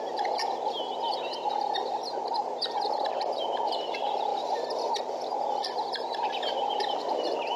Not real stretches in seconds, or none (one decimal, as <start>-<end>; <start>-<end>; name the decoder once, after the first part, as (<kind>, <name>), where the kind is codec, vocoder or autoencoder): 4.3-4.9 (vocoder, BigVGAN v2)